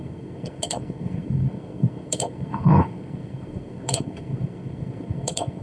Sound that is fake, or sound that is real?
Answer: fake